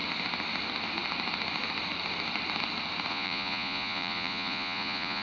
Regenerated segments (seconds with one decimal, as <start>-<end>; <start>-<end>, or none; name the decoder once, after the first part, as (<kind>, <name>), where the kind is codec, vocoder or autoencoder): 3.1-5.2 (vocoder, Vocos)